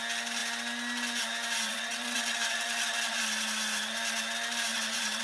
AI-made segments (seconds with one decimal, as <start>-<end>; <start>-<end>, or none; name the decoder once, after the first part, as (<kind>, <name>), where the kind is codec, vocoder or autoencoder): 1.7-3.2 (vocoder, WaveNeXt); 4.7-5.2